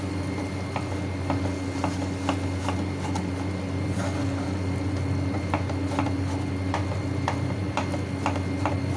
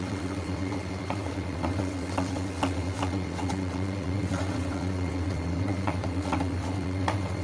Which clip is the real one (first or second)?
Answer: first